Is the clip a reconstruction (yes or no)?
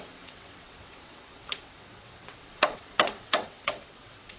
yes